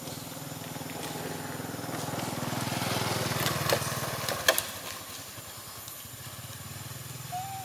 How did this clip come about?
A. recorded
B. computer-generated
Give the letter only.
A